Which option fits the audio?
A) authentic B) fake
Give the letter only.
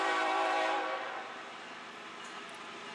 B